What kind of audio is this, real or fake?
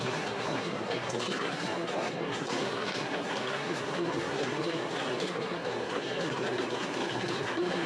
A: fake